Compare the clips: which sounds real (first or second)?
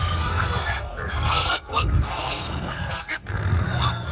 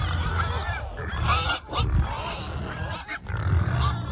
second